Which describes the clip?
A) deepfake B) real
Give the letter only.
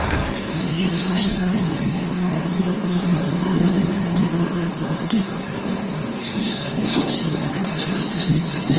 A